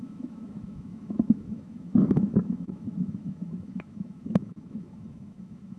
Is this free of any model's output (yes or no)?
no